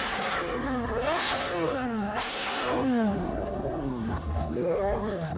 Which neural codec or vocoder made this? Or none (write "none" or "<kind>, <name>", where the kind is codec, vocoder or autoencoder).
codec, SNAC